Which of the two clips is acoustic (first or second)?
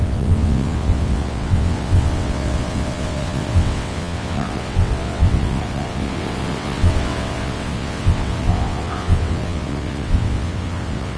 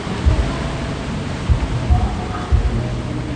second